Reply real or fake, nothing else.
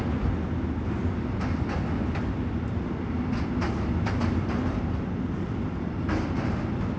real